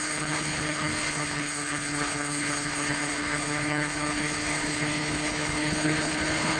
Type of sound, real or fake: fake